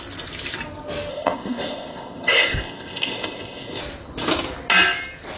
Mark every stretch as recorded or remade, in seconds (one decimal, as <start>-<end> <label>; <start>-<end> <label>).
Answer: 0.0-1.1 recorded; 1.1-3.8 remade; 3.8-5.4 recorded